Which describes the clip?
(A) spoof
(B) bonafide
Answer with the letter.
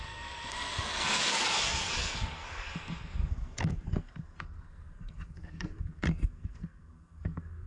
A